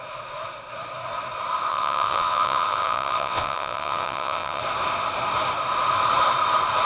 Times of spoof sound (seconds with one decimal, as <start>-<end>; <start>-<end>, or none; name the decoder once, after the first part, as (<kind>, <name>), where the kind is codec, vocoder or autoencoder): 1.7-4.6 (vocoder, WaveNeXt)